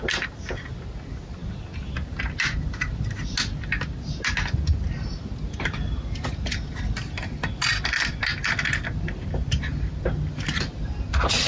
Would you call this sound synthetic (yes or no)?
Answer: no